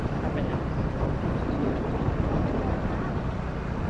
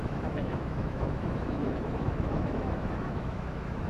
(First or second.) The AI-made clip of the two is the second